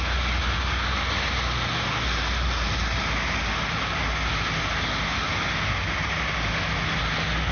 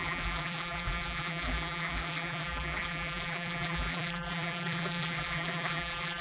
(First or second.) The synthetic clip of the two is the second